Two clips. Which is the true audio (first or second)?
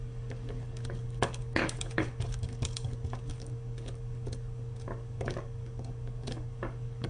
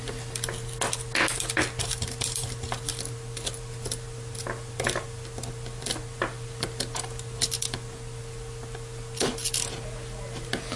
second